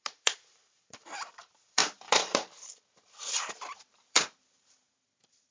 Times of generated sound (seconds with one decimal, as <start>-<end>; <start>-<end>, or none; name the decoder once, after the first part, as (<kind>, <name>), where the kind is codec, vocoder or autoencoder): 0.0-5.5 (vocoder, BigVGAN v2)